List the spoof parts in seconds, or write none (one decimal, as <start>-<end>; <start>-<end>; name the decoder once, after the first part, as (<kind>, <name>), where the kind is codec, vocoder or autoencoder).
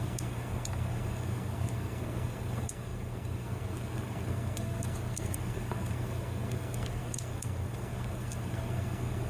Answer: 0.0-9.3 (codec, SNAC)